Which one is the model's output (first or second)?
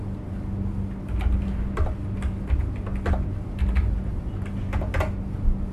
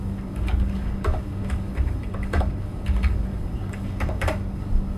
second